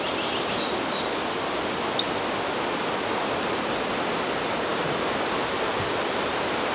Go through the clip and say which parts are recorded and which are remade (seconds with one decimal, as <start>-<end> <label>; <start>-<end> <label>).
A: 0.0-6.7 recorded